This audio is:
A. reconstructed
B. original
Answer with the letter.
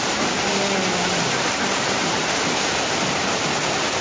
B